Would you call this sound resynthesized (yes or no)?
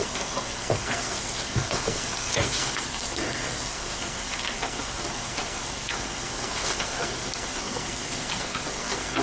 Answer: yes